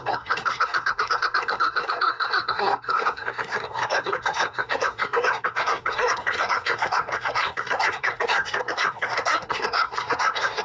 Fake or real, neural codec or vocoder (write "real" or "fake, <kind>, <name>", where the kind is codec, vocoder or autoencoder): fake, codec, SNAC